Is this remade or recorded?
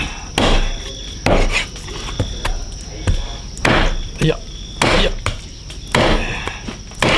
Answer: recorded